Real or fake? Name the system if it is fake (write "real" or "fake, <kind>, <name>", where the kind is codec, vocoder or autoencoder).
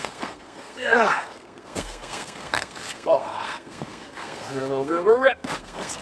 fake, codec, SNAC